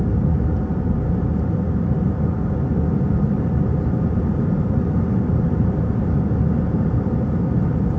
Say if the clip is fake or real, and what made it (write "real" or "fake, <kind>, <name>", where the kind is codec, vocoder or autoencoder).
fake, vocoder, BigVGAN v2